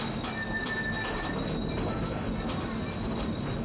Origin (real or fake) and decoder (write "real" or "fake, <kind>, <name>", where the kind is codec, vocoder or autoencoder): real